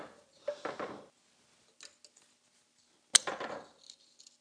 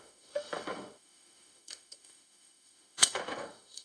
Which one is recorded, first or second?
first